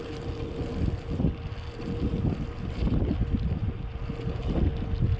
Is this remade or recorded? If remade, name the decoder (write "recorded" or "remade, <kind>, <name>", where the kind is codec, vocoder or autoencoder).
recorded